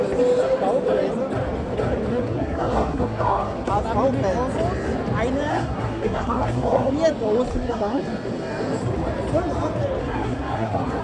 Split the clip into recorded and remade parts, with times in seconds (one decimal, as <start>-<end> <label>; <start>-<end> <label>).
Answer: 0.0-2.1 recorded; 2.1-3.7 remade; 3.7-5.5 recorded; 5.5-6.9 remade; 6.9-7.5 recorded; 7.5-8.0 remade; 8.0-10.0 recorded; 10.0-11.0 remade